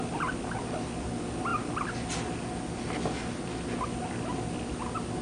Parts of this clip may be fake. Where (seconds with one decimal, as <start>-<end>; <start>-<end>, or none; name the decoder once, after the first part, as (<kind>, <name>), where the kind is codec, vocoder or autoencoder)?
none